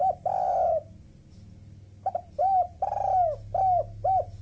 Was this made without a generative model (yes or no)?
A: yes